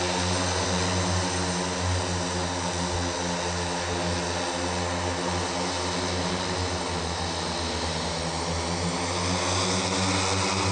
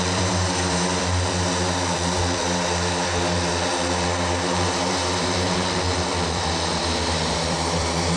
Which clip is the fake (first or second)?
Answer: second